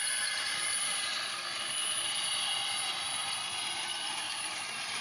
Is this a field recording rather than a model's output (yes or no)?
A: yes